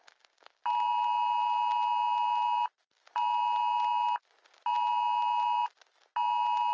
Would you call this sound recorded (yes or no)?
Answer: yes